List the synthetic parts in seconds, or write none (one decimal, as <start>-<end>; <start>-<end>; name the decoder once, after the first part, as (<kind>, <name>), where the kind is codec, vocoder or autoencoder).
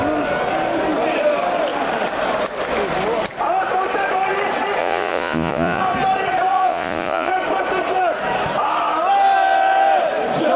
4.8-5.8 (vocoder, Vocos); 6.5-7.3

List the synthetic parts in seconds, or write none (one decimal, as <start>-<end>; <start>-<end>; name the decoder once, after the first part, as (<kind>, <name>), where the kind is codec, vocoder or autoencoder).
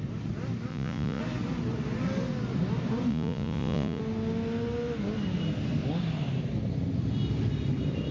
0.7-1.2 (vocoder, Vocos); 3.1-4.0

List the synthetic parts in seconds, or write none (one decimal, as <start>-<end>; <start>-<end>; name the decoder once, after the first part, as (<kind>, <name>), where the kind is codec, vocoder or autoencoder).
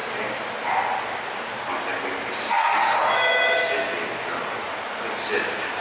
none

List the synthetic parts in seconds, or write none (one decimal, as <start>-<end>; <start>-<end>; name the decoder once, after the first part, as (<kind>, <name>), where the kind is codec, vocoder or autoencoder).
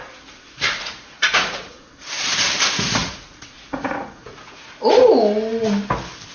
0.8-1.9 (vocoder, Vocos); 3.0-5.1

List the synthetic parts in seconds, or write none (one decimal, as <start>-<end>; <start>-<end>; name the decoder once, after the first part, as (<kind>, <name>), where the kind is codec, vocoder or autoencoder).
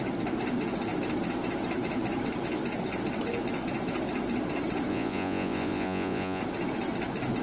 4.9-6.4 (vocoder, Vocos)